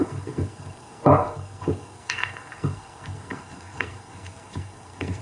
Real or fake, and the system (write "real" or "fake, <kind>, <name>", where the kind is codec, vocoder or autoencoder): fake, codec, SNAC